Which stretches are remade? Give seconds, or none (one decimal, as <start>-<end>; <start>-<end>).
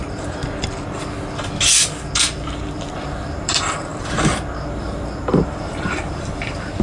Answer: 0.0-0.4; 2.2-6.8